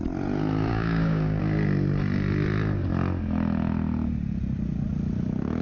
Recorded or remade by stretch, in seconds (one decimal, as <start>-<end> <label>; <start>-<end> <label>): 0.0-0.7 recorded; 0.7-1.4 remade; 1.4-5.6 recorded